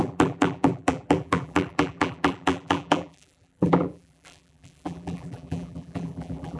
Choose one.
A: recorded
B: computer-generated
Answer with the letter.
B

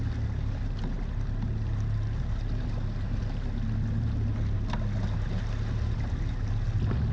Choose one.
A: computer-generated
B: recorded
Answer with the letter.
B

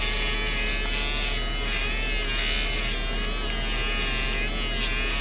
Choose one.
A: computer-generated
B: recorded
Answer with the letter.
B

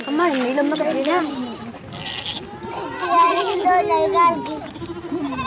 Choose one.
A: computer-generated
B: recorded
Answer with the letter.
B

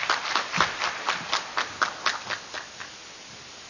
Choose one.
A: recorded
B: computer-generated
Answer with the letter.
A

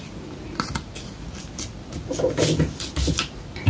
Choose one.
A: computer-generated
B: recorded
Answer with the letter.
B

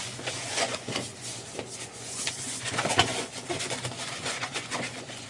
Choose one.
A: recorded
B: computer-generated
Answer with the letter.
B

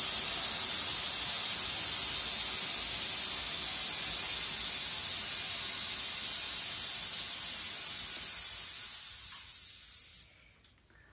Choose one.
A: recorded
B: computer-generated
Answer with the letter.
A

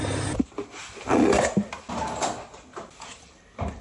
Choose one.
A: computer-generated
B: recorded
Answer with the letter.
B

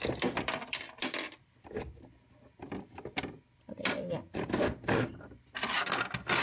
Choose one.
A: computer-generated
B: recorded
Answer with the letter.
A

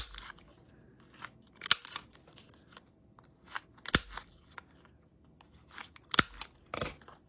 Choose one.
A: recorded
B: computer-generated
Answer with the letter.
A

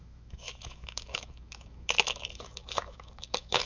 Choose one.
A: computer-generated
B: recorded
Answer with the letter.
A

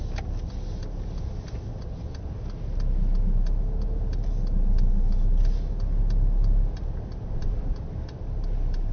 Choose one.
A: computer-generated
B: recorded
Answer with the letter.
B